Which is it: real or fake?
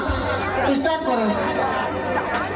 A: real